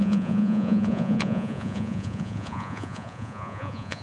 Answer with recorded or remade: remade